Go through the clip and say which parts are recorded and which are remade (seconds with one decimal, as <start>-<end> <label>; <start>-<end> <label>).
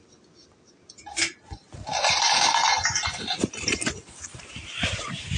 0.0-5.4 recorded